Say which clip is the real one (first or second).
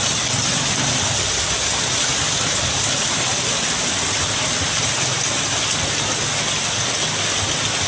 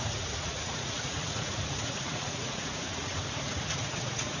first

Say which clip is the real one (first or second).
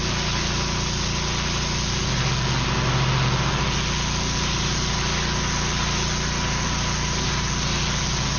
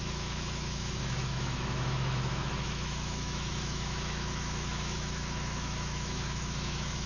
first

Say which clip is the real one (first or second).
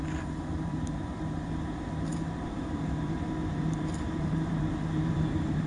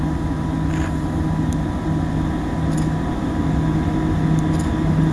second